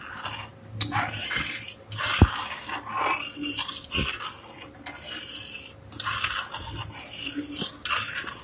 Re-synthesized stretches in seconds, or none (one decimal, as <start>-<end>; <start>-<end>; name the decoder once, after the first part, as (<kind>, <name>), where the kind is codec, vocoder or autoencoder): none